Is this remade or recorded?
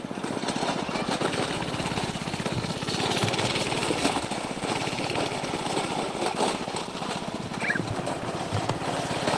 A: recorded